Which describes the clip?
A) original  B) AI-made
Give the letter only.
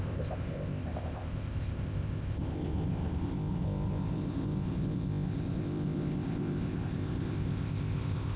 B